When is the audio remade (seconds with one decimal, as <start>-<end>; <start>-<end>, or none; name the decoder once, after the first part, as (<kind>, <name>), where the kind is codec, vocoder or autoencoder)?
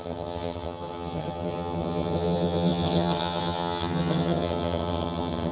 0.0-5.5 (vocoder, HiFi-GAN)